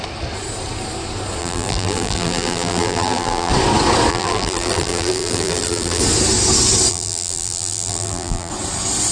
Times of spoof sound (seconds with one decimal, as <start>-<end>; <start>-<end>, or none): 1.4-3.5; 4.1-6.0; 6.9-8.5